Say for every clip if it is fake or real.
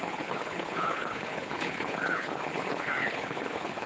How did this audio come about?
fake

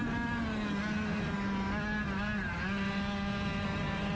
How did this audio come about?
real